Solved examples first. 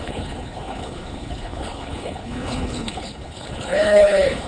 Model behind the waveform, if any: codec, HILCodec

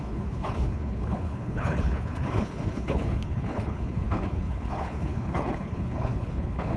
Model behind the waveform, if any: codec, HILCodec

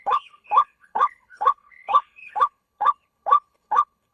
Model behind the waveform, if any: codec, HILCodec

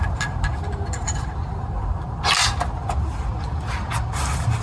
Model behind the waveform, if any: none